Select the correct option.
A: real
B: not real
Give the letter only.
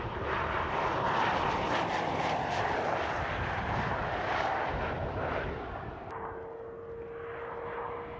A